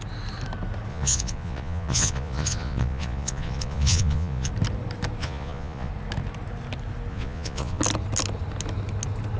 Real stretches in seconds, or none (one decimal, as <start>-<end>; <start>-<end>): 0.0-0.9; 4.5-5.2; 5.9-7.1; 7.8-9.4